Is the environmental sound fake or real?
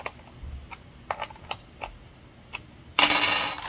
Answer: real